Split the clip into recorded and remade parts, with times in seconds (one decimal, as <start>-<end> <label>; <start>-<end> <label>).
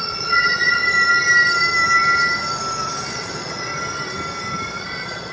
0.0-0.8 remade; 0.8-3.1 recorded; 3.1-3.7 remade; 3.7-4.7 recorded; 4.7-5.3 remade